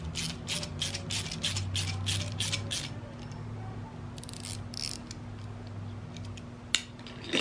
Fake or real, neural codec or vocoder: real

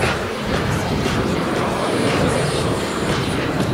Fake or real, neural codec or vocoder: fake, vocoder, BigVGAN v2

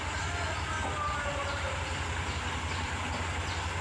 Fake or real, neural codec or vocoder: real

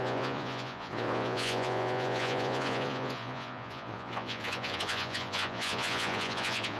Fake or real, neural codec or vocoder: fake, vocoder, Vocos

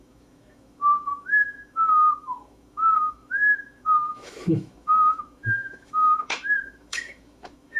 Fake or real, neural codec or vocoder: fake, autoencoder, DAC-VAE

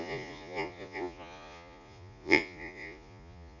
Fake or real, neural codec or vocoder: fake, vocoder, Vocos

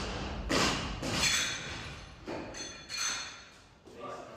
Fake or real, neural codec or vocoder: real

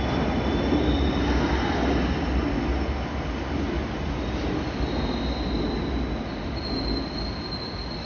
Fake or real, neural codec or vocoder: real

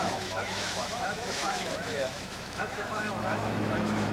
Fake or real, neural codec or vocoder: fake, autoencoder, DAC-VAE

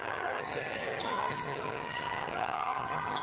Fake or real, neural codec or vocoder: fake, vocoder, HiFi-GAN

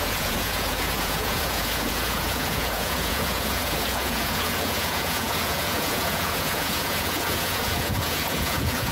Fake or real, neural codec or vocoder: fake, vocoder, Vocos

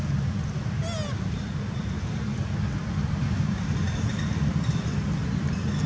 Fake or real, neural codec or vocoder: real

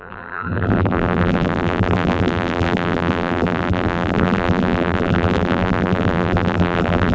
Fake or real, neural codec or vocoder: fake, vocoder, BigVGAN v2